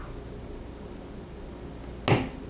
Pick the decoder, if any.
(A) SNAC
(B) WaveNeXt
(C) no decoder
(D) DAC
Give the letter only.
C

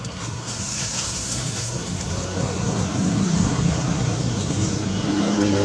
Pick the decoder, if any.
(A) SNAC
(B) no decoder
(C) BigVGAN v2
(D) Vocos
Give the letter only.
A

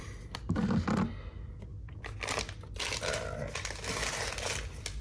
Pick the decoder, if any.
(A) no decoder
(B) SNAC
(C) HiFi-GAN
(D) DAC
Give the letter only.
A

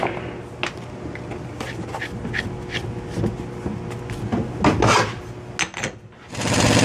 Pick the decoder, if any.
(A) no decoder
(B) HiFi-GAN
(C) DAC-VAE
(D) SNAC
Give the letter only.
A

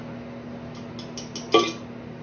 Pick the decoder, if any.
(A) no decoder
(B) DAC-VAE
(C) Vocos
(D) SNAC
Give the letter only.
A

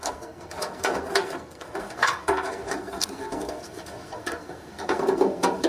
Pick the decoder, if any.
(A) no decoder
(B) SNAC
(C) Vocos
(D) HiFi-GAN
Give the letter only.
B